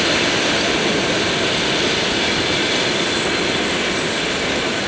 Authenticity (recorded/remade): recorded